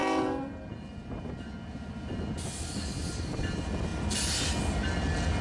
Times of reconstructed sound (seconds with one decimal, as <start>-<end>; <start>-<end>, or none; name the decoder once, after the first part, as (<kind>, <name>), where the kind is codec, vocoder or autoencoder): none